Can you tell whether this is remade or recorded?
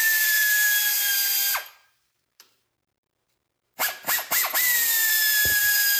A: remade